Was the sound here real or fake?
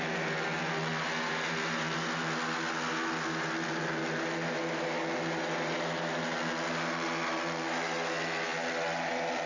real